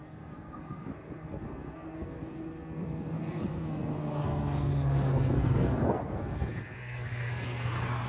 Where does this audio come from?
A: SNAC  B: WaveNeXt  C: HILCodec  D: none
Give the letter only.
A